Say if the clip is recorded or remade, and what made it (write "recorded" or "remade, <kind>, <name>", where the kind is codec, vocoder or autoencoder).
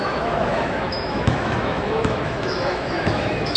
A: remade, autoencoder, DAC-VAE